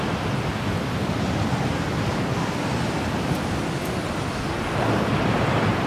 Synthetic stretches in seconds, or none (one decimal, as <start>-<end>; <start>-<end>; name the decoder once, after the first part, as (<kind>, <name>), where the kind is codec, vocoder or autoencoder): none